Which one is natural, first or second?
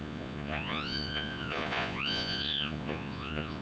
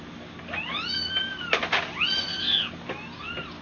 second